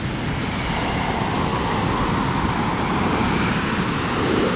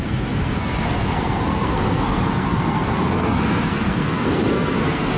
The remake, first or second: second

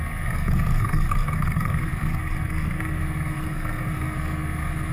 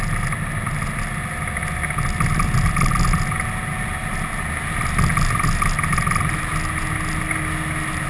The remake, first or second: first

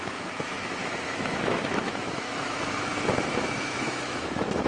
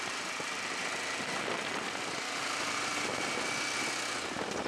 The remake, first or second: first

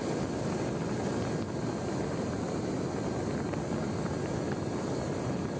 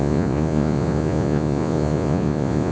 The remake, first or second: second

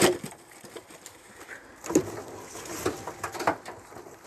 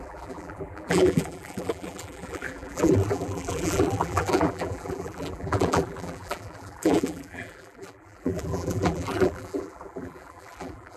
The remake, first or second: second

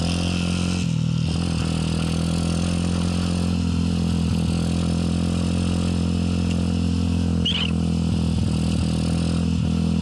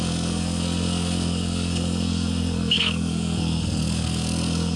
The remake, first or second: second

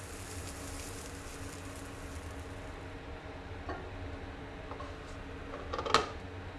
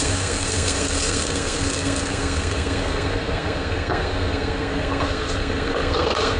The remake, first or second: second